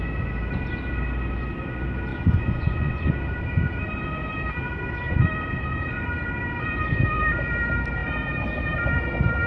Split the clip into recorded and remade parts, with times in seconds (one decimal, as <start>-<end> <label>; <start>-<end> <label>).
0.0-2.1 recorded; 2.1-3.1 remade; 3.1-9.5 recorded